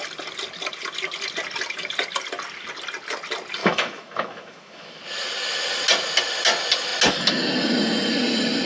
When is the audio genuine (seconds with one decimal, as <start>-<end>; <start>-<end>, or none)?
0.0-3.6; 5.0-8.7